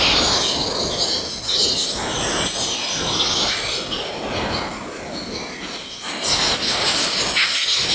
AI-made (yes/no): no